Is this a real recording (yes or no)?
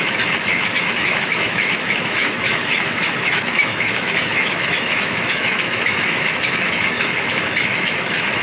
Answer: no